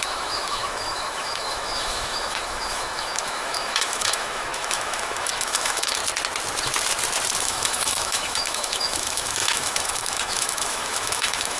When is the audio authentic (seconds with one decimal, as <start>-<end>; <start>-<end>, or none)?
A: 6.0-7.4